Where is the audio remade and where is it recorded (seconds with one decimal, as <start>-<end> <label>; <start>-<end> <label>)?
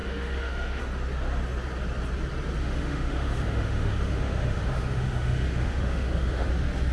0.0-0.8 remade; 0.8-2.6 recorded; 2.6-6.5 remade; 6.5-6.9 recorded